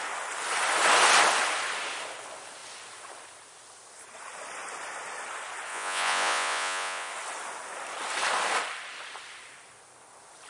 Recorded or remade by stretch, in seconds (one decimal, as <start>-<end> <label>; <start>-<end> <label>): 0.0-5.7 recorded; 5.7-7.1 remade; 7.1-10.5 recorded